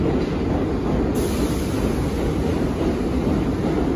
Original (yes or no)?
yes